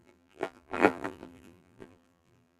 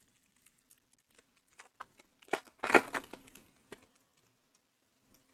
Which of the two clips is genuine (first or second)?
second